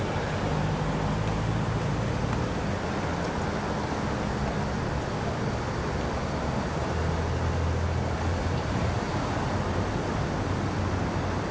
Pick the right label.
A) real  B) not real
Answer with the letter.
A